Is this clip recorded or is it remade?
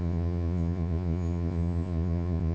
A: remade